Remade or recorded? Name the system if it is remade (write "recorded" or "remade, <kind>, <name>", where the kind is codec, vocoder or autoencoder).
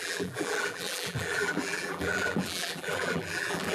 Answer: remade, vocoder, BigVGAN v2